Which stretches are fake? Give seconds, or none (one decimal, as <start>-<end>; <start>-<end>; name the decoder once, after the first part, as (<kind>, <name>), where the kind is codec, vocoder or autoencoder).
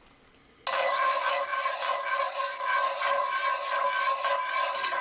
none